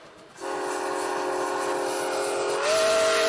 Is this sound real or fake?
real